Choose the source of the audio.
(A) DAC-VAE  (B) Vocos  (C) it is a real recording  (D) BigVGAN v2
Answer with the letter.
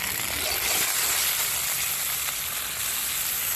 C